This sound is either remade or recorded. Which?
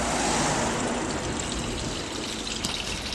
recorded